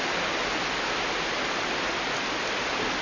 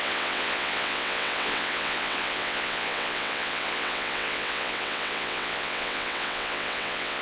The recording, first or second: first